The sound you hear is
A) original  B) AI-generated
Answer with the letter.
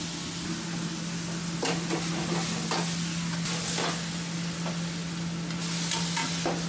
A